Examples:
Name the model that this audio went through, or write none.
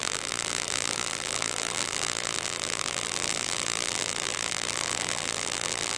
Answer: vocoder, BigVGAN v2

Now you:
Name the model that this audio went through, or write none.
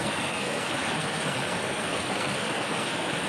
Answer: codec, SNAC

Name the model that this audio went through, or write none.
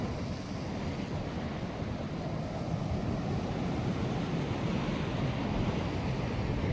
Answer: none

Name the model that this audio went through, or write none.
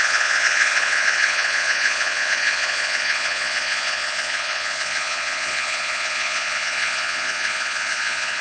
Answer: vocoder, Vocos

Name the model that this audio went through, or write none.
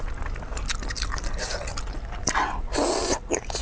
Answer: none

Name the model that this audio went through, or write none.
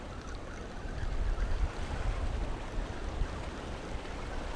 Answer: none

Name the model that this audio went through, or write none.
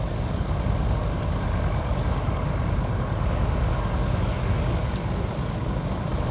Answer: codec, DAC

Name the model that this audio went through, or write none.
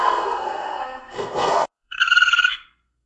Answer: codec, SNAC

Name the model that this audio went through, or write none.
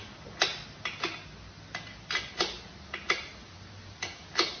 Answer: none